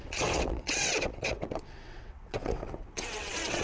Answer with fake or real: fake